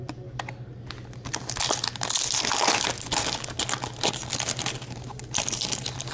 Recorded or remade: recorded